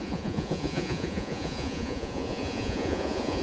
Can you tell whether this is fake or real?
fake